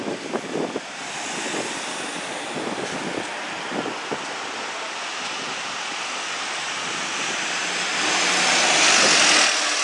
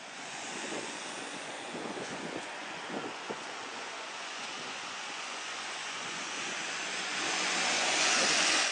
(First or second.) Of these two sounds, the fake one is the second